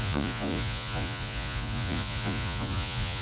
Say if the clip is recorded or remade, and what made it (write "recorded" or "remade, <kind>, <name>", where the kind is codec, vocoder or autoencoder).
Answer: remade, vocoder, Vocos